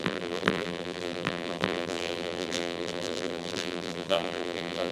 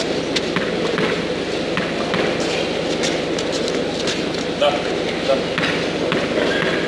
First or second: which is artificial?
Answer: first